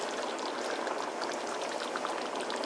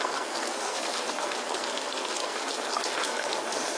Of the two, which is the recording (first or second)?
first